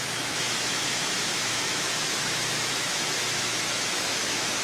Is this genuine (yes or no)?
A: no